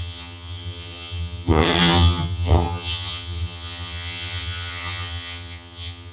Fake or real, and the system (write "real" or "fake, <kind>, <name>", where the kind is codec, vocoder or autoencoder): fake, vocoder, HiFi-GAN